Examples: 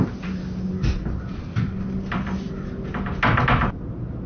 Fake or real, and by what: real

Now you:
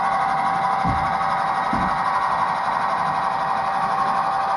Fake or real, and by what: real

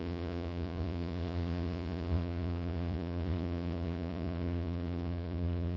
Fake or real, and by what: fake, vocoder, Vocos